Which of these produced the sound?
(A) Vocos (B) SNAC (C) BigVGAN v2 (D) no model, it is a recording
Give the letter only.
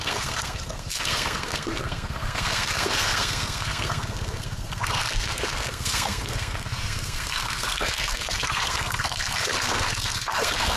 B